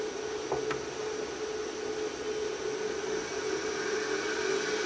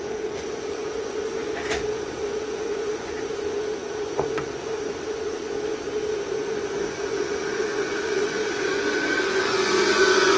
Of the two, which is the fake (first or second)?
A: second